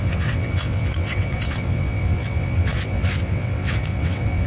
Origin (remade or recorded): remade